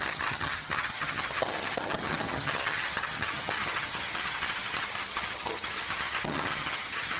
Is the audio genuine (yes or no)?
no